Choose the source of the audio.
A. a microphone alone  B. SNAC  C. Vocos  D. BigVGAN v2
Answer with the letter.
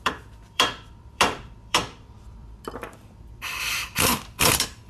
D